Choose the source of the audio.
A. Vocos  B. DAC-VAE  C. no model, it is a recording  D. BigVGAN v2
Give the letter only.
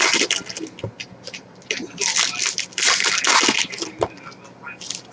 C